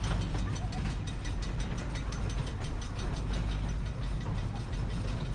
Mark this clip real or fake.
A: real